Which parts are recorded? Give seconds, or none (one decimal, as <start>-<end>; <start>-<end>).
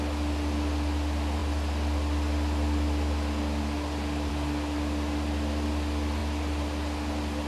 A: 0.0-7.5